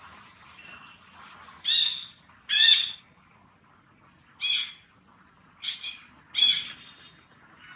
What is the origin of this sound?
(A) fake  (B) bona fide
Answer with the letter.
B